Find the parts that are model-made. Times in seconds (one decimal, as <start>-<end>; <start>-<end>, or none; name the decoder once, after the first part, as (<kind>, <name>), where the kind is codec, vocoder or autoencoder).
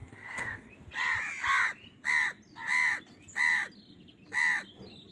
0.0-0.7 (codec, SNAC)